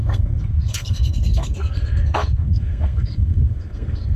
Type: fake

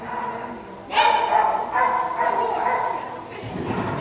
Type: real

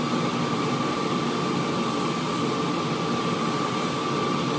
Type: real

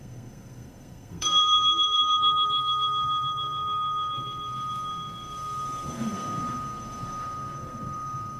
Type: fake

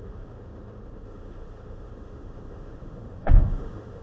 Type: fake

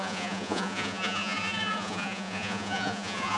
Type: fake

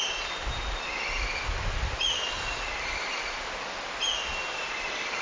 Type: real